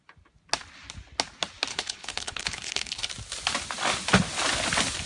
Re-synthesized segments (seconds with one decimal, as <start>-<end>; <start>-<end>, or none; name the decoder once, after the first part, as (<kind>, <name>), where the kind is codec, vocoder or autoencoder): 1.7-3.1 (codec, HILCodec)